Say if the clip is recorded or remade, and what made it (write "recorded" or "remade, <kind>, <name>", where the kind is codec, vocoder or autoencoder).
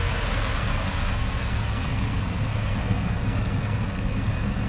remade, codec, SNAC